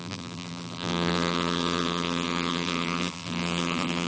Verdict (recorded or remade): remade